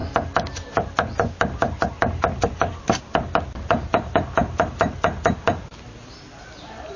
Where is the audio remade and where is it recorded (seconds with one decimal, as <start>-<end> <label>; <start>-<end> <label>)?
0.0-7.0 recorded